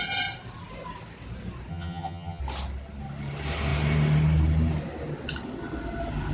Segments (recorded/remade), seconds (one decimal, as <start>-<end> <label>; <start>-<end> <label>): 0.0-1.7 recorded; 1.7-2.4 remade; 2.4-6.3 recorded